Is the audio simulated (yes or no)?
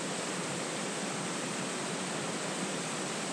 no